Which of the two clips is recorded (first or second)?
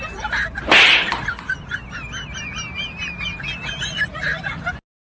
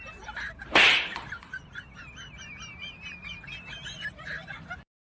first